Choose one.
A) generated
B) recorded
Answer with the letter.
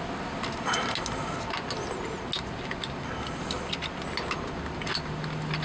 B